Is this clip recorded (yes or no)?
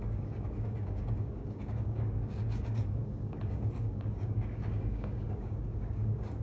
no